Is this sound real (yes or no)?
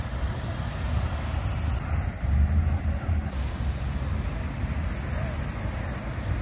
yes